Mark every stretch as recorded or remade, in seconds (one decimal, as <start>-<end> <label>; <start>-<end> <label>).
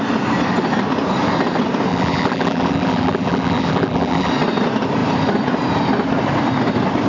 0.0-1.9 recorded; 1.9-4.3 remade; 4.3-7.1 recorded